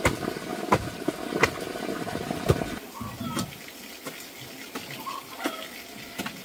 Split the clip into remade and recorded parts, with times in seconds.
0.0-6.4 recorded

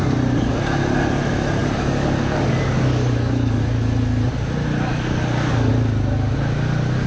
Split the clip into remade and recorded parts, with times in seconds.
0.0-1.6 recorded; 1.6-3.6 remade; 3.6-4.9 recorded; 4.9-5.7 remade; 5.7-7.1 recorded

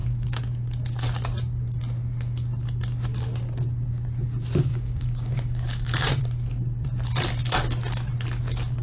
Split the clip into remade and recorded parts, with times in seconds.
0.0-4.7 recorded; 4.7-6.2 remade; 6.2-8.8 recorded